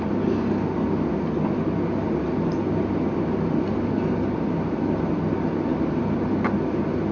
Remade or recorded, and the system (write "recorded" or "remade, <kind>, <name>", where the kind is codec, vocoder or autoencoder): recorded